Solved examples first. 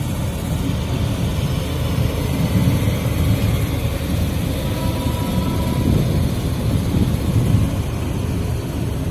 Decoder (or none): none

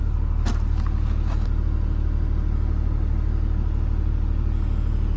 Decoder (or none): none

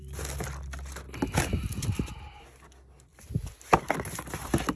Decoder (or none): none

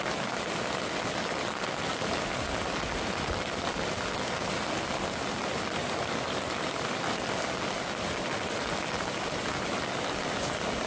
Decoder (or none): none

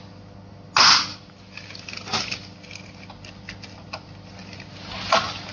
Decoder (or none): none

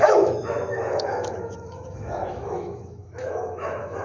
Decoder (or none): autoencoder, DAC-VAE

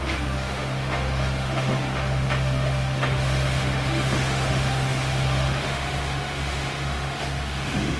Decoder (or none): autoencoder, DAC-VAE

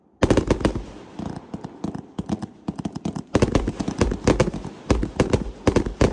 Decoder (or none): none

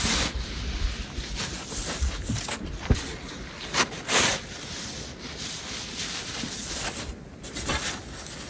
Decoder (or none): none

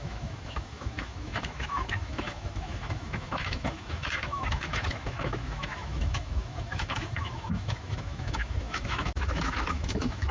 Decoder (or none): autoencoder, DAC-VAE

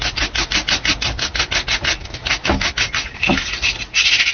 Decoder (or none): none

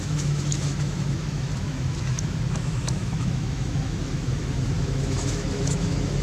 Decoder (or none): autoencoder, DAC-VAE